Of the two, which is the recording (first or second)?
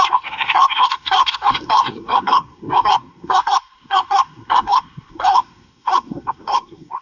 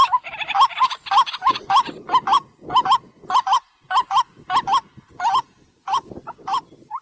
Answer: second